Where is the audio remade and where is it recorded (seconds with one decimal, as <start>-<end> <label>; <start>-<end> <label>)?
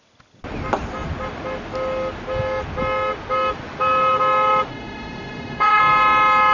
0.0-4.7 recorded; 4.7-5.8 remade; 5.8-6.5 recorded